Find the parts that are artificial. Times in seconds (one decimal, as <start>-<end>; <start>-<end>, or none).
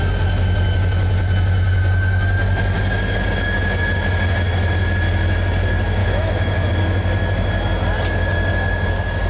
6.0-6.7